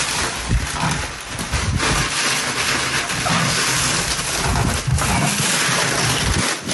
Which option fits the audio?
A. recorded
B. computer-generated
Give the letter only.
A